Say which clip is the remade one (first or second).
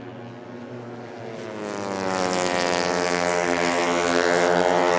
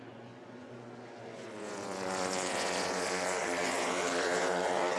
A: second